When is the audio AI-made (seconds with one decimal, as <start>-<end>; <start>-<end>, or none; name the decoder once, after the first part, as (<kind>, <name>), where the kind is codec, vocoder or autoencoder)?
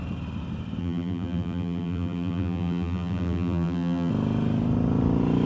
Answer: 0.8-4.1 (vocoder, BigVGAN v2)